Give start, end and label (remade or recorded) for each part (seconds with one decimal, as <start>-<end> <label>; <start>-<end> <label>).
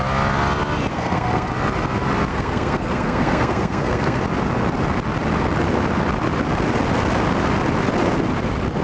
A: 0.0-0.9 recorded; 0.9-1.5 remade; 1.5-2.3 recorded; 2.3-4.2 remade; 4.2-8.8 recorded